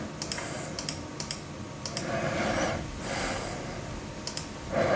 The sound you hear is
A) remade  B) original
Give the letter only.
B